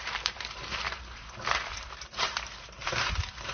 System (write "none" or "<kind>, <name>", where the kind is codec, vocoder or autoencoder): vocoder, BigVGAN v2